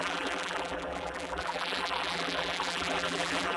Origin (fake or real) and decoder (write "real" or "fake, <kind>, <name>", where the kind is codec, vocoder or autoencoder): fake, vocoder, BigVGAN v2